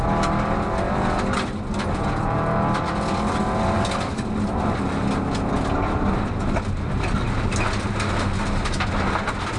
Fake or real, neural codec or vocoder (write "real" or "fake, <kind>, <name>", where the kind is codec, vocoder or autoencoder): real